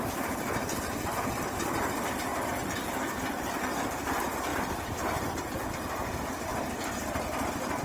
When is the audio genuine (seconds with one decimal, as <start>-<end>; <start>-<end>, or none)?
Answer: 2.3-2.9